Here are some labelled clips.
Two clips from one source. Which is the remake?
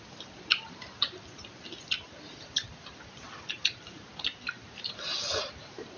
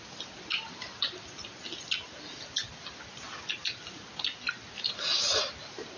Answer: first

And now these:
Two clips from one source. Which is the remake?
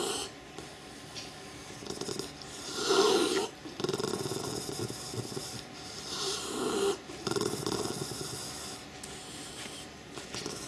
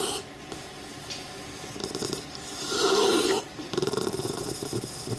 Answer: second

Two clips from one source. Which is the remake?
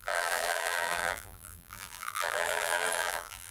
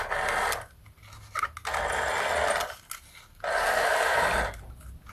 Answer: first